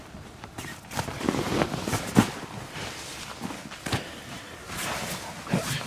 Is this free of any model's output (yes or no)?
yes